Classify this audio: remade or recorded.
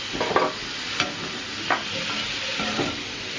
recorded